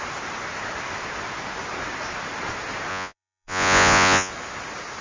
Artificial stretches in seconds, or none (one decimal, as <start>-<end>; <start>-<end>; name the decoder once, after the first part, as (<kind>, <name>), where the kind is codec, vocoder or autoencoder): 2.9-4.3 (vocoder, Vocos)